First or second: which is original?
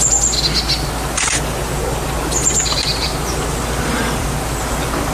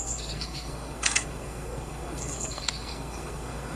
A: first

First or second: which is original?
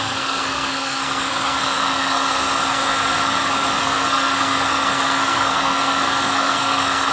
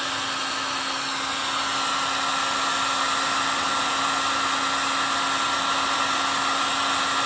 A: second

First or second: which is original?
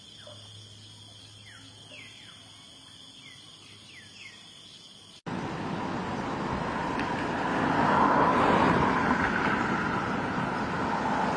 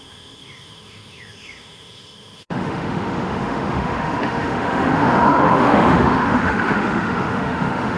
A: first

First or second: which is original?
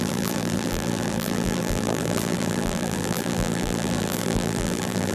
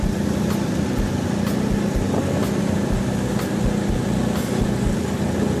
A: second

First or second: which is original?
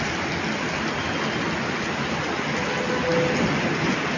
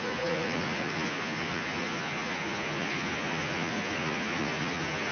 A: first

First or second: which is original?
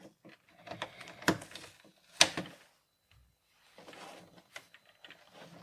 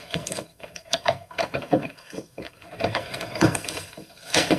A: first